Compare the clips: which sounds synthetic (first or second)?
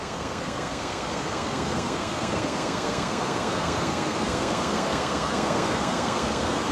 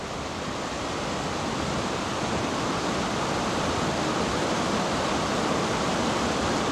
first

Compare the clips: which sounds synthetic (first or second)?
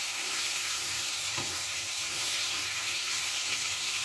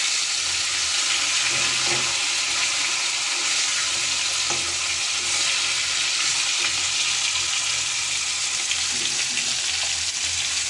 first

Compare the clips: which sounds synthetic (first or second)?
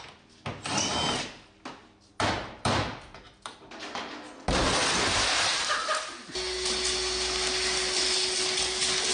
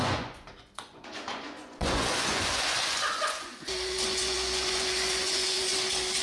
second